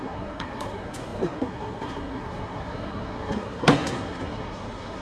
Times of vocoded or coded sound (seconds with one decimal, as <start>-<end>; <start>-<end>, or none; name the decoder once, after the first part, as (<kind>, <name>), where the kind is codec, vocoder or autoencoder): 0.0-5.0 (codec, SNAC)